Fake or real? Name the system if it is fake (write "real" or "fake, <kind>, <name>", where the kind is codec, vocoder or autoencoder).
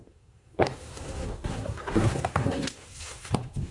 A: fake, codec, SNAC